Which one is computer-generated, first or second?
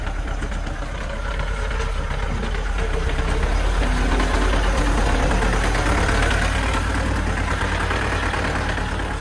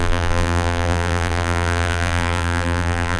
second